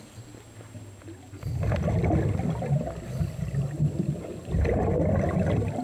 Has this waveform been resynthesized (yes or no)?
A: no